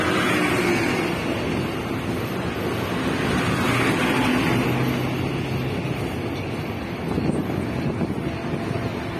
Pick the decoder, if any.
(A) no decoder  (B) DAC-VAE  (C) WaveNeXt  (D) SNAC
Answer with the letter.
A